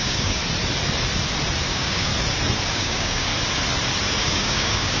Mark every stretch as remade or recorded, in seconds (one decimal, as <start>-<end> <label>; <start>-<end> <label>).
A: 0.0-0.4 remade; 0.4-1.7 recorded; 1.7-2.1 remade; 2.1-2.7 recorded; 2.7-3.3 remade; 3.3-4.2 recorded; 4.2-5.0 remade